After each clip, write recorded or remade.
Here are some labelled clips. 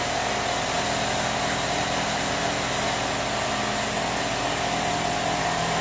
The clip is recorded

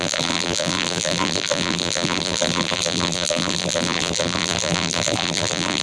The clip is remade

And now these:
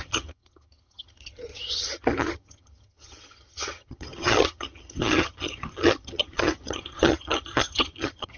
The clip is remade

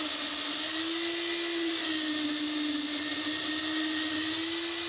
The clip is recorded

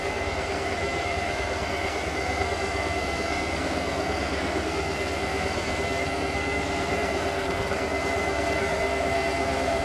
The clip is remade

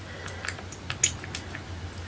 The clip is recorded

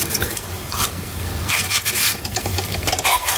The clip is remade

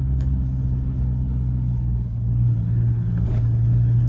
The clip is remade